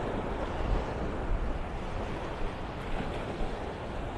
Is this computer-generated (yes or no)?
no